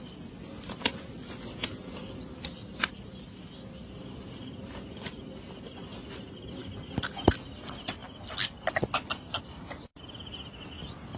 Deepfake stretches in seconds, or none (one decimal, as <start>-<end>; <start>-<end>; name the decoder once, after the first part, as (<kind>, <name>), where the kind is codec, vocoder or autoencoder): none